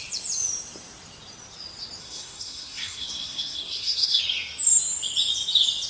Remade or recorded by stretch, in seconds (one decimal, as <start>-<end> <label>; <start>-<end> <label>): 0.0-2.0 recorded; 2.0-4.2 remade; 4.2-5.9 recorded